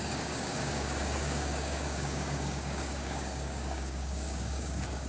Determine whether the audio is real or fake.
fake